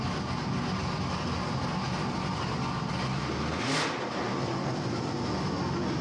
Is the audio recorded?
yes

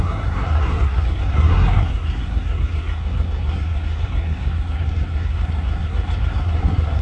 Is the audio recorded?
no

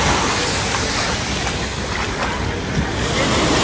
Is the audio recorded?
yes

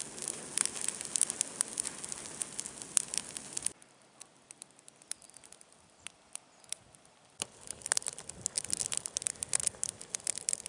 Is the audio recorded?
yes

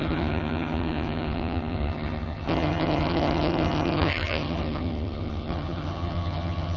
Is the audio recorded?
no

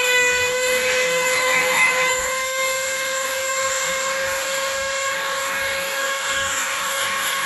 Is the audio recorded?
no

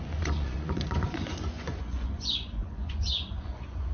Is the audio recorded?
no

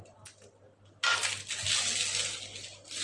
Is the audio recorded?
yes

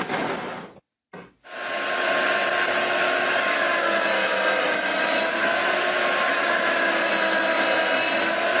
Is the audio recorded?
yes